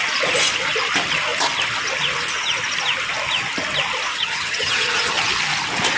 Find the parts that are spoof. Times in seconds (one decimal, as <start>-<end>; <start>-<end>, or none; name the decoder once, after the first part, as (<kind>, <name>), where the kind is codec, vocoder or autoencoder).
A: 4.1-5.2 (vocoder, HiFi-GAN)